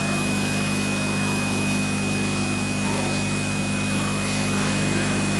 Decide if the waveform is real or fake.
fake